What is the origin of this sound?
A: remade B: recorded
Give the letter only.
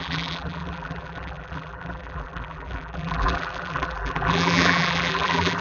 A